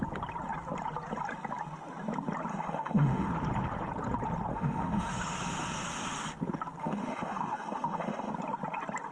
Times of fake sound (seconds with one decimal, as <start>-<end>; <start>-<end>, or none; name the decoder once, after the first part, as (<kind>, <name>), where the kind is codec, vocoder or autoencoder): 2.5-3.3 (autoencoder, DAC-VAE); 4.5-5.4; 6.8-8.3